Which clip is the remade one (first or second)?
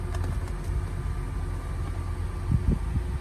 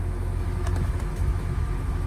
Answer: second